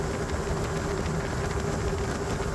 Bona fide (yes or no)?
yes